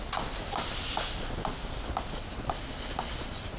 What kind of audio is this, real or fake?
real